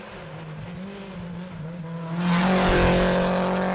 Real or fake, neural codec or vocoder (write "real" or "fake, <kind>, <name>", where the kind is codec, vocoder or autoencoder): real